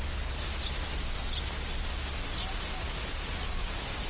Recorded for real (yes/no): yes